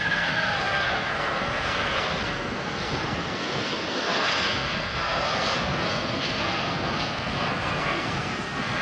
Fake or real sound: fake